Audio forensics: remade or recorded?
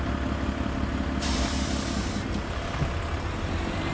recorded